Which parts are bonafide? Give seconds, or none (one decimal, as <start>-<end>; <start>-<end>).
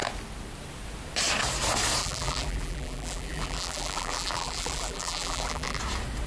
0.0-2.0; 5.8-6.3